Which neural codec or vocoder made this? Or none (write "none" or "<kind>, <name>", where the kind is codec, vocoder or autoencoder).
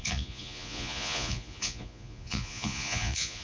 vocoder, Vocos